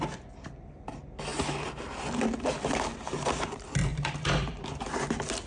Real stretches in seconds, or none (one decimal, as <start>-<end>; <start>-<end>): 0.0-3.9; 4.8-5.5